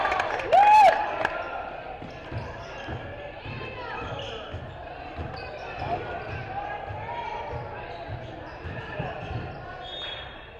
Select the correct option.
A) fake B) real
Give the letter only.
B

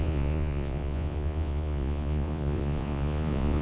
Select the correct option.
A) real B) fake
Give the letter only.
B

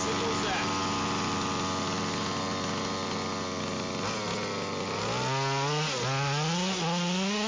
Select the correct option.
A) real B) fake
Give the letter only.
A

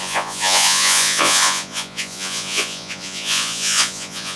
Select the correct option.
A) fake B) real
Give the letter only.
A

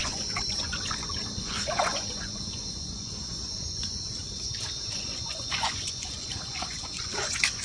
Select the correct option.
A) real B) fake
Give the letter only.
B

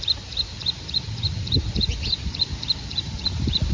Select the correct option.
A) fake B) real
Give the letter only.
B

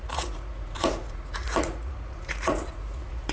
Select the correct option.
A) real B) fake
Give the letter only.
B